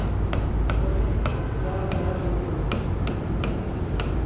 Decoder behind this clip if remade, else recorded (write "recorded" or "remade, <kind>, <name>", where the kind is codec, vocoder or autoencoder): recorded